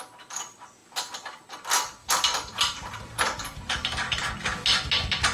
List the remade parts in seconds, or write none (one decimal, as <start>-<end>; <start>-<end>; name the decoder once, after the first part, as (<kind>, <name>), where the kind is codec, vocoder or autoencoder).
0.8-1.4 (vocoder, BigVGAN v2); 2.0-4.3